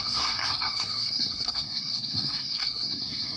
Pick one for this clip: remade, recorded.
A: remade